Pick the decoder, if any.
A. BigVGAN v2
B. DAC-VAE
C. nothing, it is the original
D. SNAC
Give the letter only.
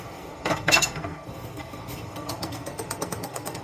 D